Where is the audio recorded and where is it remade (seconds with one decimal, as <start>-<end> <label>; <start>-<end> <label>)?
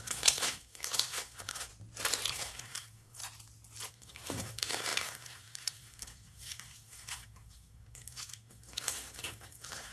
0.0-1.7 remade; 1.7-2.3 recorded; 2.3-3.2 remade; 3.2-3.9 recorded; 3.9-9.9 remade